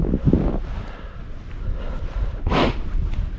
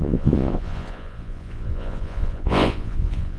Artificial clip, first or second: second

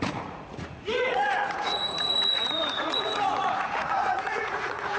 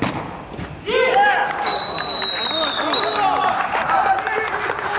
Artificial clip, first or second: first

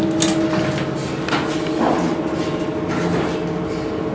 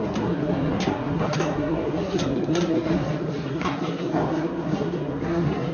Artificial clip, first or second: second